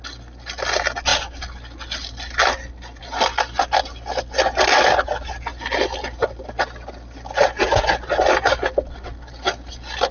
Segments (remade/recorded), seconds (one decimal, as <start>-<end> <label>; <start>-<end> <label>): 0.0-10.1 recorded